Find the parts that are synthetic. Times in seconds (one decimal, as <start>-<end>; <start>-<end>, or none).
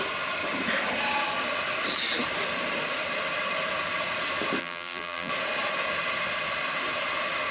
4.6-5.3